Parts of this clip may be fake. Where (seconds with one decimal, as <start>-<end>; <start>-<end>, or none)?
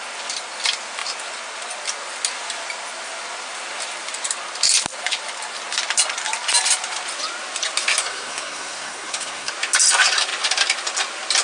8.0-9.5